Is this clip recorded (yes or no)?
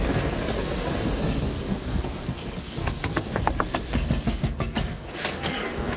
no